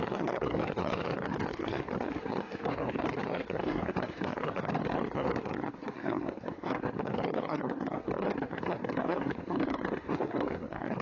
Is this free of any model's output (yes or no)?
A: no